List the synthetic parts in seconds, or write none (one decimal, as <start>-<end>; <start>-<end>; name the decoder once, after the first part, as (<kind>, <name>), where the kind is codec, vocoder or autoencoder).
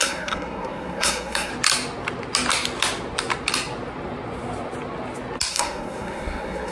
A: 0.0-1.5 (codec, SNAC); 5.5-6.7